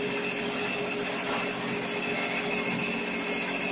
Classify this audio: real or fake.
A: real